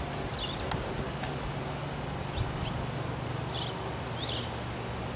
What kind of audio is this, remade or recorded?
recorded